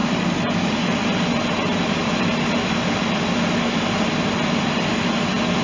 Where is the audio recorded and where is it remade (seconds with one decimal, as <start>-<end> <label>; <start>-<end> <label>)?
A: 0.0-5.6 recorded